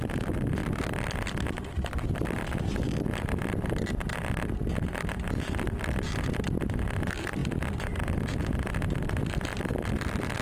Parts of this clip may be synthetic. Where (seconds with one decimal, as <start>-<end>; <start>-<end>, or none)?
0.6-1.3